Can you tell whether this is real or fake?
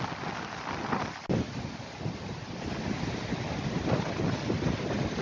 real